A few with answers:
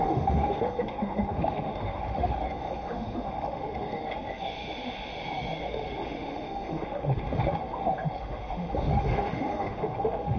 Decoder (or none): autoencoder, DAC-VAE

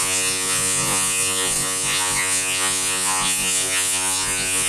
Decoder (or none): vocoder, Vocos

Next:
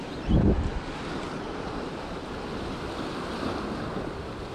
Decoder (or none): none